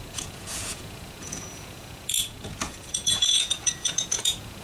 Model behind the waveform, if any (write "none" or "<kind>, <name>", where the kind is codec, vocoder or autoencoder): vocoder, Vocos